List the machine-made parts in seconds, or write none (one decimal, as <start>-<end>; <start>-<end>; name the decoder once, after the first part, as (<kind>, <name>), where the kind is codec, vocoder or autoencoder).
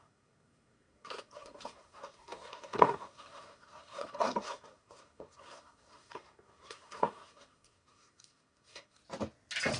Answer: 0.0-9.0 (codec, SNAC)